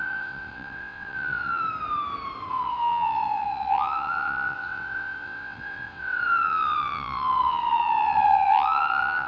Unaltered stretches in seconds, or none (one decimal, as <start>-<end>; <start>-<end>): 1.6-2.5